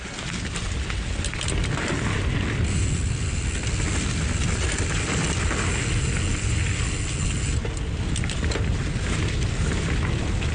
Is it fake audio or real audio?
real